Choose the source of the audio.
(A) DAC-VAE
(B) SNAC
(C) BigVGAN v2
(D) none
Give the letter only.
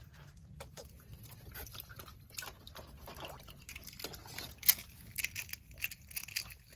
D